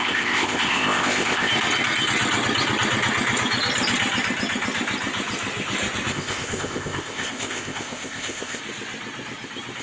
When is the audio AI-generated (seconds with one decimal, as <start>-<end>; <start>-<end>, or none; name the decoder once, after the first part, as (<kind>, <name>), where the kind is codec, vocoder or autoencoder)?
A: 0.0-1.5 (codec, ZipCodec); 6.1-8.6